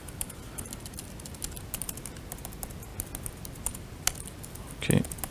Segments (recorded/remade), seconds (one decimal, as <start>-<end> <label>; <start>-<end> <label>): 0.0-0.5 remade; 0.5-5.3 recorded